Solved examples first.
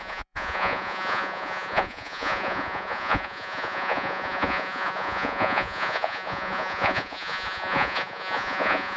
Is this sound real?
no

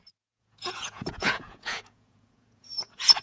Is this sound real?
no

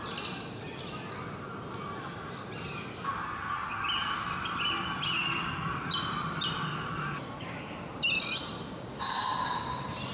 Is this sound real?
yes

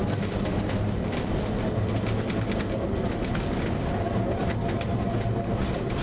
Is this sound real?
yes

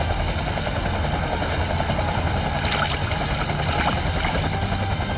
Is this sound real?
yes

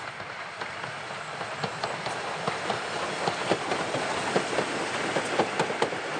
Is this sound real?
yes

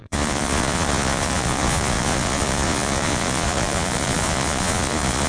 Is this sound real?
no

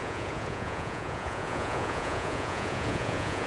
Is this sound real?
no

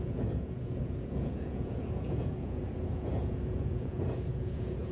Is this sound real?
no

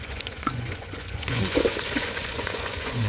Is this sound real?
no